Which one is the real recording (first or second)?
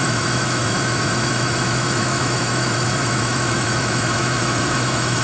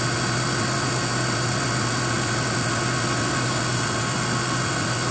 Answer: second